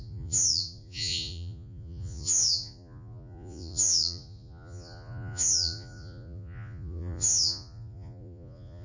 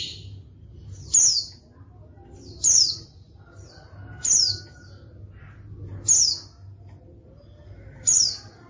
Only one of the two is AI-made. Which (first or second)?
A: first